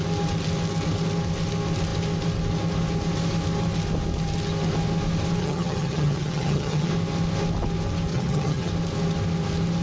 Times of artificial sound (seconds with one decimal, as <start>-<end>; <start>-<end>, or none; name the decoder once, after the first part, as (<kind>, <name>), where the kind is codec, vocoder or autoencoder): 5.4-6.9 (vocoder, HiFi-GAN); 8.1-8.7